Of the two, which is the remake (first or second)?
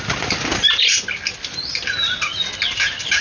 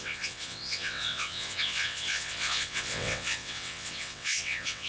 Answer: second